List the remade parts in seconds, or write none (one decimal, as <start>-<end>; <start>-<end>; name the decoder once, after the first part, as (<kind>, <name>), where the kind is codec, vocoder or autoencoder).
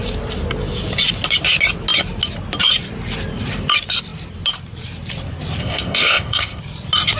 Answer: 5.6-6.6 (codec, ZipCodec)